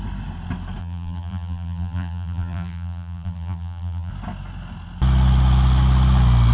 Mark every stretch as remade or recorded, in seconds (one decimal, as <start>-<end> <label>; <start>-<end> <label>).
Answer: 0.0-0.8 recorded; 0.8-4.1 remade; 4.1-6.5 recorded